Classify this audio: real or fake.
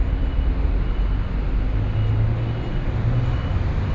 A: real